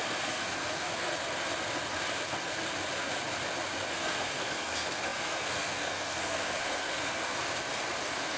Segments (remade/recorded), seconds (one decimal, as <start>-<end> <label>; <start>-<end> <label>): 0.0-1.1 remade; 1.1-3.9 recorded; 3.9-7.4 remade; 7.4-8.0 recorded; 8.0-8.4 remade